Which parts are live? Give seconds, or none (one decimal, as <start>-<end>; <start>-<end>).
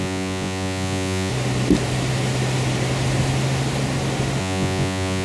1.3-4.4